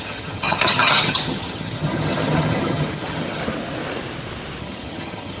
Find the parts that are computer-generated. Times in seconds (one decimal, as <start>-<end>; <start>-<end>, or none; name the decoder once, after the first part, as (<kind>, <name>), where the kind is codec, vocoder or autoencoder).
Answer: 0.0-3.4 (vocoder, HiFi-GAN); 4.6-5.4